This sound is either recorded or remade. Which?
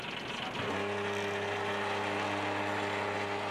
recorded